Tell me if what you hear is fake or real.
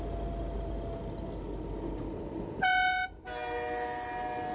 real